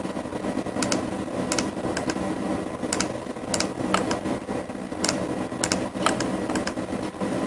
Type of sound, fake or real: real